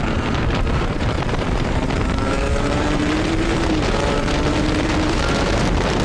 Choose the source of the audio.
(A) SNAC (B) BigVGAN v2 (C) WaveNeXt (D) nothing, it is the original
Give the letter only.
B